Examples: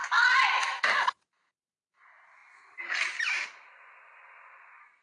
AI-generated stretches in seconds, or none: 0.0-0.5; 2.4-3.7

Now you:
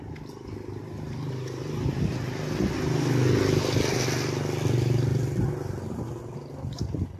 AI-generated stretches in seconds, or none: none

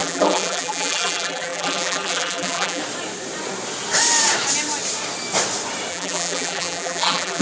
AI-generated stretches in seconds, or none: 0.0-2.8; 5.9-7.4

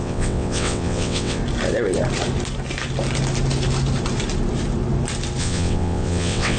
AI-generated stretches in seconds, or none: 0.0-1.4; 5.4-6.6

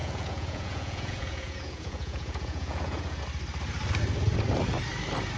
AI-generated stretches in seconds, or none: 0.0-3.2

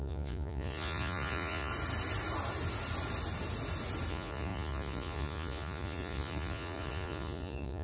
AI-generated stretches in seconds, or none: 0.0-1.7; 4.1-7.8

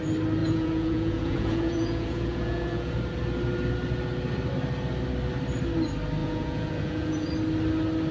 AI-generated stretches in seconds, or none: 0.4-2.9; 6.2-7.3

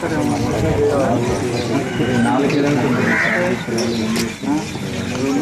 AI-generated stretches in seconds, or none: 1.8-2.5